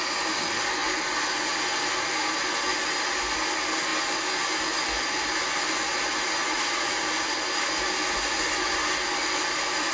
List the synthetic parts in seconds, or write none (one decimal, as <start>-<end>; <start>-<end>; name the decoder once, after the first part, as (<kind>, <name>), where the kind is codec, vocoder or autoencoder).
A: 6.4-7.0 (vocoder, Vocos)

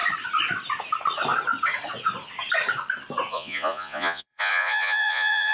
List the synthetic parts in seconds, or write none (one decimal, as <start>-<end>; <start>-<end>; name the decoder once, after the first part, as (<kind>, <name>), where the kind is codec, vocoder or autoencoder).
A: 3.3-5.5 (vocoder, Vocos)

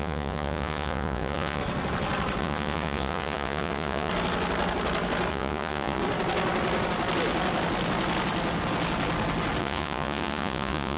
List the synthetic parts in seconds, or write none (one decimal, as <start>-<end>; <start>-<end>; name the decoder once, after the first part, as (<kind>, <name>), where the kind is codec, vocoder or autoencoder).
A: 0.0-1.6 (vocoder, Vocos); 2.4-4.1; 5.3-6.0; 9.6-11.0

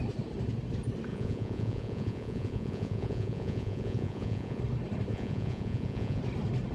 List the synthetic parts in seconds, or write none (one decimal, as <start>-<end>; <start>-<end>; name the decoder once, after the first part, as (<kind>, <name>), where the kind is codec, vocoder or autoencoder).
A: 1.1-4.6 (vocoder, Vocos); 5.1-6.2

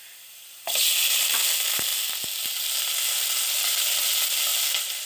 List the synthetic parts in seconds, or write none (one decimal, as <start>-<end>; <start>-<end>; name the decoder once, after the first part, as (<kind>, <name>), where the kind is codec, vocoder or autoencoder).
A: none

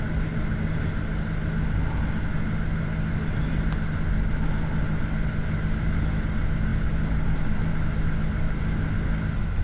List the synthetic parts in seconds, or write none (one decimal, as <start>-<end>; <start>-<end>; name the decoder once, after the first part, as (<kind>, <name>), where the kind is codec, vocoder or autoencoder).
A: none

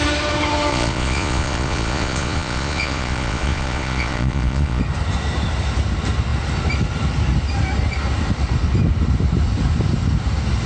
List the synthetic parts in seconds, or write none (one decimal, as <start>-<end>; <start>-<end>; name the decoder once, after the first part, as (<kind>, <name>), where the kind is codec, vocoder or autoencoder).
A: 0.7-4.8 (vocoder, Vocos)